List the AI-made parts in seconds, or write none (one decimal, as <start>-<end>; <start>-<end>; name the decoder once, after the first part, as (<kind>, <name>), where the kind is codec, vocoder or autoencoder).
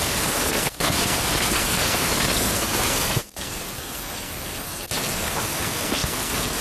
0.0-6.6 (codec, SNAC)